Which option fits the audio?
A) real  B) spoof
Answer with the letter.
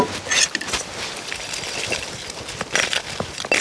A